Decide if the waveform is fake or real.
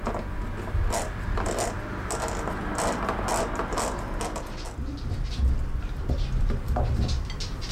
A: real